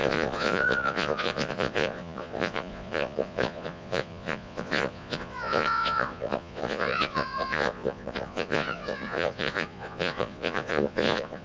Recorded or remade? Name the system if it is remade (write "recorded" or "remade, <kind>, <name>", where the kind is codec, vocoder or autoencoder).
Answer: remade, vocoder, Vocos